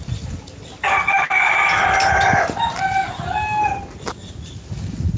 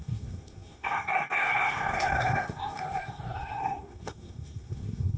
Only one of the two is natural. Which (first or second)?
first